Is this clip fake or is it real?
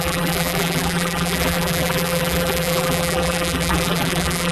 fake